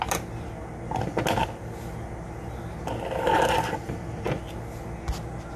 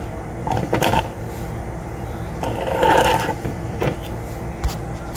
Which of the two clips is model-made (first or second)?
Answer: second